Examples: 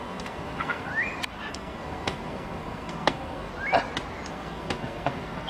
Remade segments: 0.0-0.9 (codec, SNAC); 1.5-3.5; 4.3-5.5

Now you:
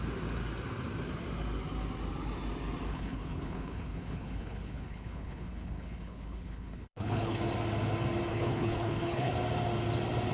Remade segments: 2.9-7.4 (codec, HILCodec); 8.3-9.3

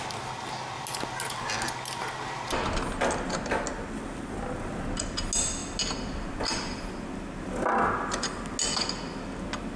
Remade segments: none

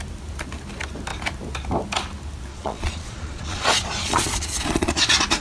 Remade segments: 2.5-4.9 (vocoder, Vocos)